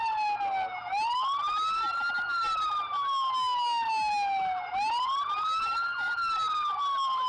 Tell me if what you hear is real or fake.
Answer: real